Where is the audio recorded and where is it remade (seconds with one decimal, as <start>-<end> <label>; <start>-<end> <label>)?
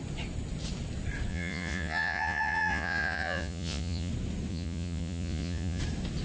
0.0-1.3 recorded; 1.3-4.1 remade; 4.1-4.5 recorded; 4.5-5.8 remade; 5.8-6.2 recorded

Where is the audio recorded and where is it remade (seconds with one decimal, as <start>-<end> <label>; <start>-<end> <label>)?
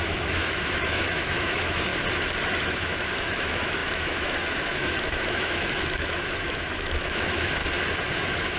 0.0-1.9 remade; 1.9-2.4 recorded; 2.4-7.6 remade; 7.6-8.2 recorded; 8.2-8.6 remade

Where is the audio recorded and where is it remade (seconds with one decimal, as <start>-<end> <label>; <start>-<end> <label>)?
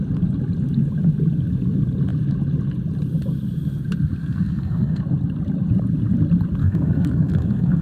0.0-4.2 recorded; 4.2-5.0 remade; 5.0-6.6 recorded; 6.6-7.8 remade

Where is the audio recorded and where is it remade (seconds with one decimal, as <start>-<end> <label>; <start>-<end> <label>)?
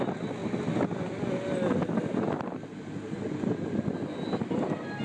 0.0-5.0 recorded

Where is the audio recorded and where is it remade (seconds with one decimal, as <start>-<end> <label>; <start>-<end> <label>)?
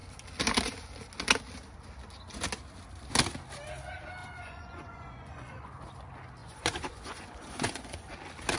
0.0-4.2 recorded; 4.2-5.7 remade; 5.7-6.4 recorded; 6.4-8.1 remade; 8.1-8.6 recorded